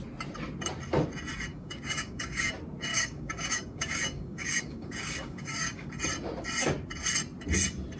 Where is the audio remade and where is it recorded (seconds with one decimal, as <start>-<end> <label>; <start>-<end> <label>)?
0.0-1.5 recorded; 1.5-2.5 remade; 2.5-2.9 recorded; 2.9-5.9 remade; 5.9-8.0 recorded